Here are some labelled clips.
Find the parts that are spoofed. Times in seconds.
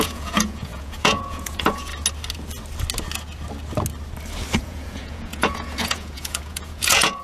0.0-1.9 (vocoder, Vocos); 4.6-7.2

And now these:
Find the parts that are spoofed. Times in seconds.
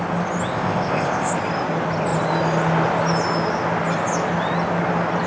0.5-1.3 (codec, ZipCodec)